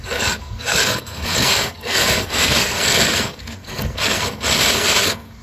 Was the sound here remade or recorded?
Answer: remade